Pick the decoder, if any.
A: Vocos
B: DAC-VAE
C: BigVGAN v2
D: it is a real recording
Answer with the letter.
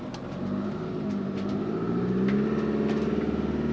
D